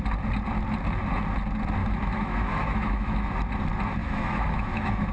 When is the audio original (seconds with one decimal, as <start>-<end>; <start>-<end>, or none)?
0.0-1.8; 3.3-4.0